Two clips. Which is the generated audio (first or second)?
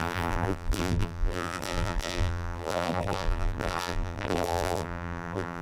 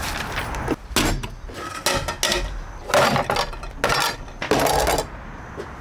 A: first